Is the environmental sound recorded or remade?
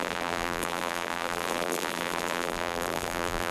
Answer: remade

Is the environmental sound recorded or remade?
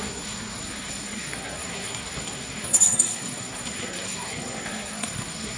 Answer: remade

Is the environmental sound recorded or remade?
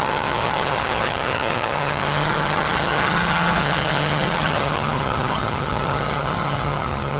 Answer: remade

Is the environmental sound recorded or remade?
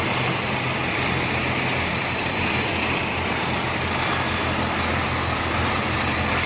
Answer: recorded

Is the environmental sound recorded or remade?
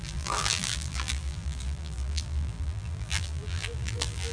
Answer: remade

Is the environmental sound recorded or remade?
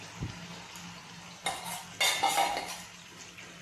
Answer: recorded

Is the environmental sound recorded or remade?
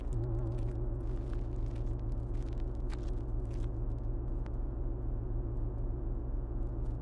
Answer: recorded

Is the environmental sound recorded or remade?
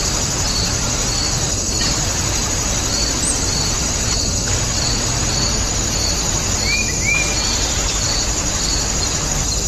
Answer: recorded